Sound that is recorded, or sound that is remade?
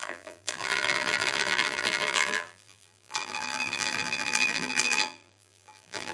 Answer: remade